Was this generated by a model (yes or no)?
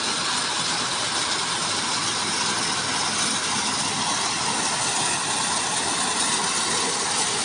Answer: no